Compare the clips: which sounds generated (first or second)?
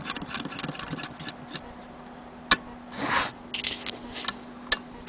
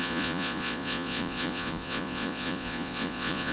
second